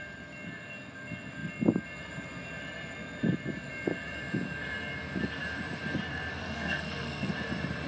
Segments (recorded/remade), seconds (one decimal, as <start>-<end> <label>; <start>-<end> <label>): 0.0-6.4 recorded; 6.4-7.3 remade; 7.3-7.9 recorded